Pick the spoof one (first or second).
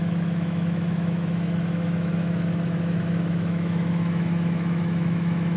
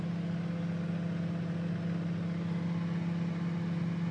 first